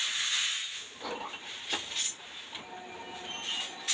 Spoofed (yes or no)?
no